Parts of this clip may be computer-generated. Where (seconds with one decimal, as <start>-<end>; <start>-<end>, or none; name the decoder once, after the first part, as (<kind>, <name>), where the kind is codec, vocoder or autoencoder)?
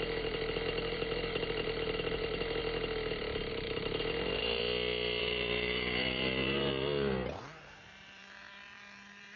0.0-2.6 (vocoder, BigVGAN v2); 3.5-4.6; 5.2-6.7; 7.4-9.4